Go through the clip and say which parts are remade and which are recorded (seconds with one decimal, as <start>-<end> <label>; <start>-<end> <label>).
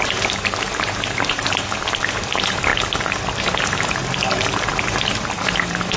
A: 0.0-2.7 remade; 2.7-3.4 recorded; 3.4-4.0 remade; 4.0-4.8 recorded; 4.8-6.0 remade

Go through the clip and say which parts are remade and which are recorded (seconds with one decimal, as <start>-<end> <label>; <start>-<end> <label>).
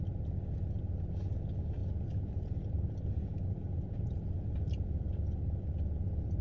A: 0.0-1.8 recorded; 1.8-5.6 remade; 5.6-6.4 recorded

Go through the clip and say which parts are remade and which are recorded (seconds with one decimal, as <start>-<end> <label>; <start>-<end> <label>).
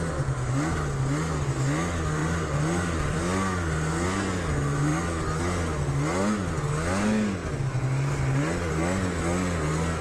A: 0.0-2.2 recorded; 2.2-3.2 remade; 3.2-10.0 recorded